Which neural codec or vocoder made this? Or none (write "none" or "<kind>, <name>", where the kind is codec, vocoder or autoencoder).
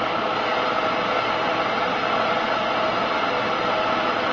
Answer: none